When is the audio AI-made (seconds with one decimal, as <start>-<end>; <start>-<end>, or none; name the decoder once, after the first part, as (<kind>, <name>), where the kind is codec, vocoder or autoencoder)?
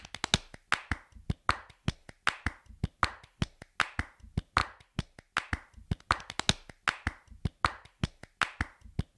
none